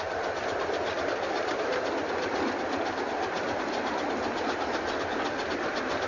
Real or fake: real